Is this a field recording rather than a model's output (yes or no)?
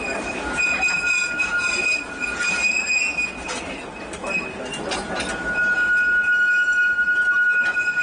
yes